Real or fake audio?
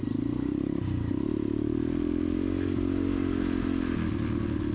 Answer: real